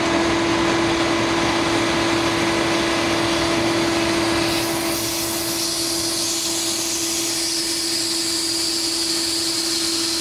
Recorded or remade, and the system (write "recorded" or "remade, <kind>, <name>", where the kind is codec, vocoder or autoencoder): recorded